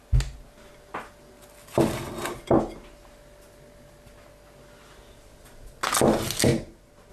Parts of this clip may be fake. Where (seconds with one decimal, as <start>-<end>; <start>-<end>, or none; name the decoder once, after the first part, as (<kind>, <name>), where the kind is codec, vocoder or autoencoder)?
none